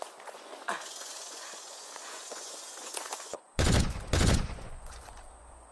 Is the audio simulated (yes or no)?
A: yes